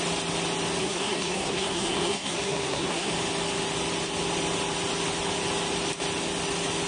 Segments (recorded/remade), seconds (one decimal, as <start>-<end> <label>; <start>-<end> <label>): 0.0-0.8 recorded; 0.8-3.1 remade; 3.1-6.9 recorded